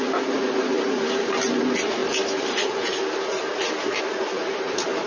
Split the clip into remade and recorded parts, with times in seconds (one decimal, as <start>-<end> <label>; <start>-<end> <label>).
0.0-5.1 recorded